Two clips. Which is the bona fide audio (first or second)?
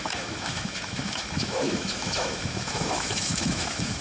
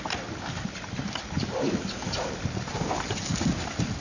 second